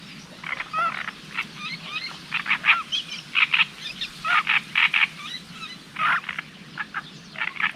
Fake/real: real